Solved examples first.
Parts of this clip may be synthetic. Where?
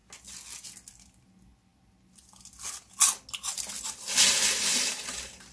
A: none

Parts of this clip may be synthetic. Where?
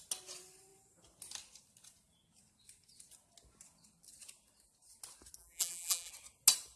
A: 5.4-6.1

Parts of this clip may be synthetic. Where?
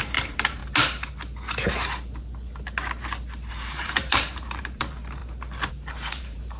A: 0.0-0.6; 3.5-5.2; 5.7-6.6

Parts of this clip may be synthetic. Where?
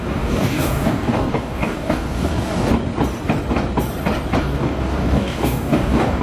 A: 0.0-2.7; 4.4-6.2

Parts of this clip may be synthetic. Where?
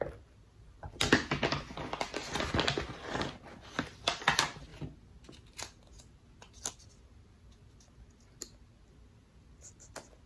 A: none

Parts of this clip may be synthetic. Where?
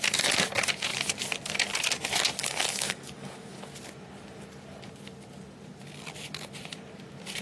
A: 2.4-3.6